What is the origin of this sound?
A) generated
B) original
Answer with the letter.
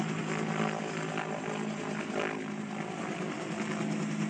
B